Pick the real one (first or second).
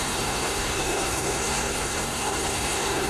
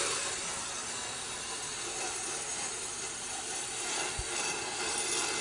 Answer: second